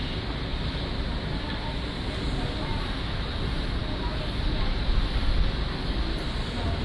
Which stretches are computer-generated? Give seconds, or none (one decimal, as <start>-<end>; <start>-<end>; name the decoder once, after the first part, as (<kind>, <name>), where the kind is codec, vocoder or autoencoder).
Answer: none